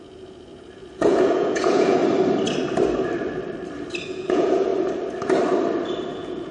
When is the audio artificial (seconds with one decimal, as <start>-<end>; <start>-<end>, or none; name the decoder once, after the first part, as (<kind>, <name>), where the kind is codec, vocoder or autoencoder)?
0.0-2.0 (vocoder, Vocos); 4.1-4.7; 6.1-6.5